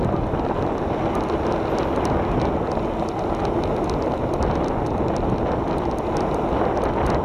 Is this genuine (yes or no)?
yes